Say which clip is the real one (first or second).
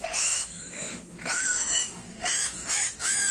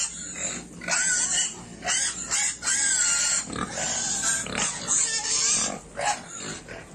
second